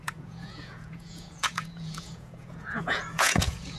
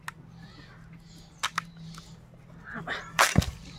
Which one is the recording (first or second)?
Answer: second